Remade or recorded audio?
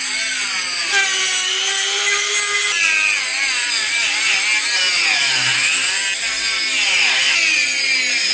recorded